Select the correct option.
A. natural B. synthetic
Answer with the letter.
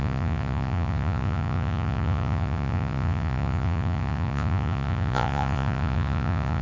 B